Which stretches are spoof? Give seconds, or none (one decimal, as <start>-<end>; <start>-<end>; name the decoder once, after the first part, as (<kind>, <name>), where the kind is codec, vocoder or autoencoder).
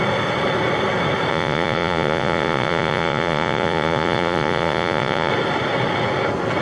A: 1.3-5.3 (vocoder, Vocos)